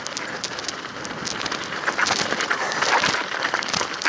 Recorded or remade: recorded